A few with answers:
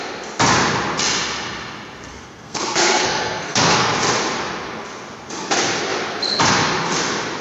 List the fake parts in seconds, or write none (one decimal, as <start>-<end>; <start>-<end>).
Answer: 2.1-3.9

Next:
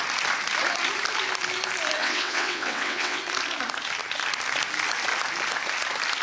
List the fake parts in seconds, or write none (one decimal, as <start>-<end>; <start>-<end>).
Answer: 2.0-3.2

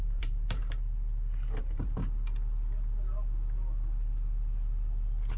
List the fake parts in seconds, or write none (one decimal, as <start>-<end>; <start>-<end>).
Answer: 0.0-0.6; 1.6-2.0

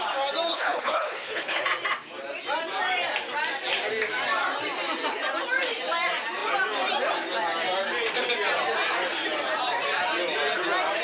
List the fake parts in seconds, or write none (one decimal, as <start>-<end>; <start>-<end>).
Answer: 0.5-1.6